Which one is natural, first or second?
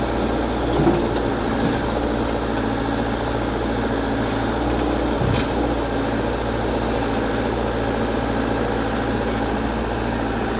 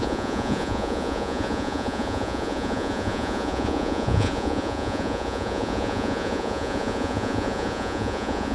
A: first